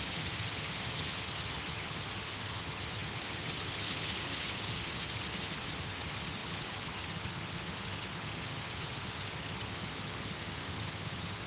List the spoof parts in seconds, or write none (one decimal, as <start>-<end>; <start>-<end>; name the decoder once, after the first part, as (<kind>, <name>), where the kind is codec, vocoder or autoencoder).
0.0-11.5 (vocoder, HiFi-GAN)